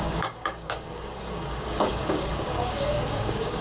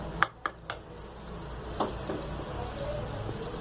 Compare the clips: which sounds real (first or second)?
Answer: second